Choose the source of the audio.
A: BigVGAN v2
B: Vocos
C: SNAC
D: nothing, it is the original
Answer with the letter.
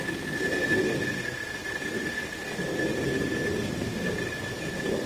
A